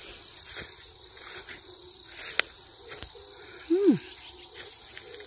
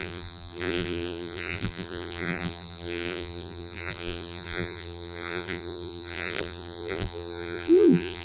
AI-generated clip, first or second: second